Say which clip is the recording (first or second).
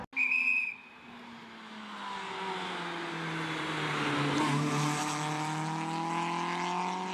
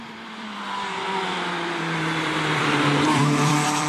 first